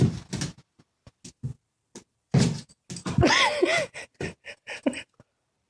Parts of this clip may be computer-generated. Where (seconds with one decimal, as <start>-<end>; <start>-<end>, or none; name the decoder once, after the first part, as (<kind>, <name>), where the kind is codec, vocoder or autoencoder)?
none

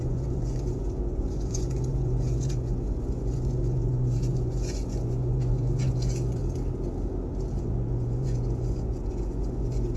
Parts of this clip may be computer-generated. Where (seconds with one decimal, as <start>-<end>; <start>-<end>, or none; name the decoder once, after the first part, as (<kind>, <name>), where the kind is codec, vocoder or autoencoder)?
0.0-6.4 (vocoder, Vocos); 7.6-10.0

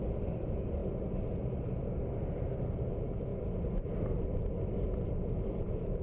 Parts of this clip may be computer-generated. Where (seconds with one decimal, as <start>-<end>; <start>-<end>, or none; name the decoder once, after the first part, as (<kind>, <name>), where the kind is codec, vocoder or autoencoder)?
none

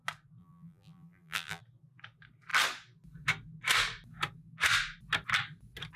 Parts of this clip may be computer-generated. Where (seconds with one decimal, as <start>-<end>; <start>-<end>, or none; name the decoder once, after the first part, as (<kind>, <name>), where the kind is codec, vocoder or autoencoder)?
0.4-1.6 (vocoder, BigVGAN v2)